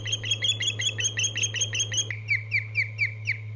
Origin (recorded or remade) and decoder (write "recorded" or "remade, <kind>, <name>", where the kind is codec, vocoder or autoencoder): recorded